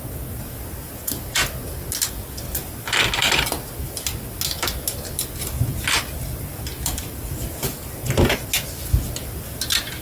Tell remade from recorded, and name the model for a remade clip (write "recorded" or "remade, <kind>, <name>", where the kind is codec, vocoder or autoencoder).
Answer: recorded